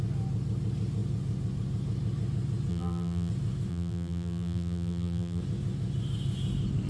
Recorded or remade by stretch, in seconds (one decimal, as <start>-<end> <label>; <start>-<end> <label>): 0.0-2.7 recorded; 2.7-3.3 remade; 3.3-3.7 recorded; 3.7-5.4 remade; 5.4-6.9 recorded